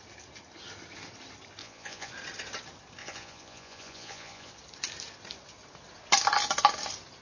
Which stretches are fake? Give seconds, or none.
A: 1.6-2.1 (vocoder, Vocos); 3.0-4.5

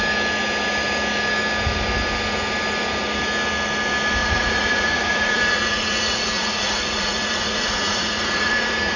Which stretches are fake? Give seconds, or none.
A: 4.2-9.0 (vocoder, Vocos)

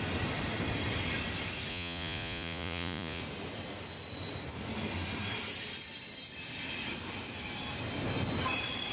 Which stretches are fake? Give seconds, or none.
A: 1.7-3.2 (vocoder, Vocos)

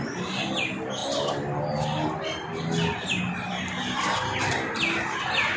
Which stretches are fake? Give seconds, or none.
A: none

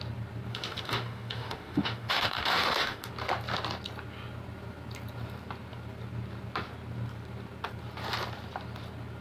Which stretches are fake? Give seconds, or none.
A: 0.5-3.1 (autoencoder, DAC-VAE)

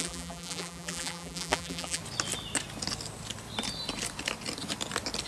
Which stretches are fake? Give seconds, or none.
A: 0.0-2.0 (vocoder, BigVGAN v2)

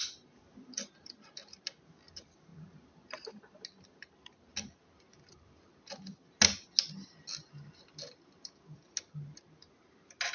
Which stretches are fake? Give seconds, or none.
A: none